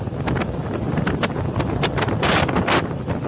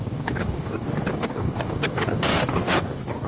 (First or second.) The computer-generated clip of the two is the second